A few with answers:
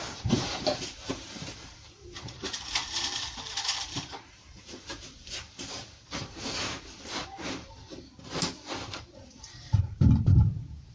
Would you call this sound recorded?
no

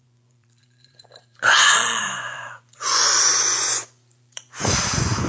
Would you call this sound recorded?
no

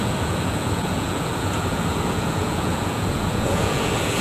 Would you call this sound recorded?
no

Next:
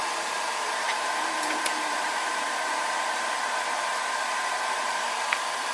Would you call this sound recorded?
no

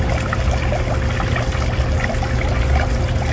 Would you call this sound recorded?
yes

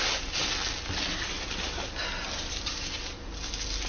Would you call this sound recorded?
yes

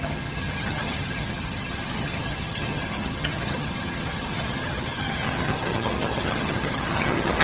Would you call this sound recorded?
no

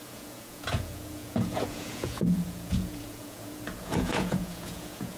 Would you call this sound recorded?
no